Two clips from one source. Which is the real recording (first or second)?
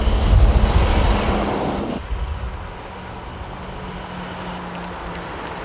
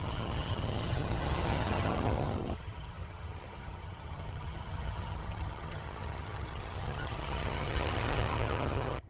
first